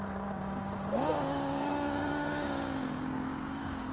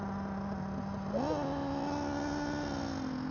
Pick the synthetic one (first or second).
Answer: first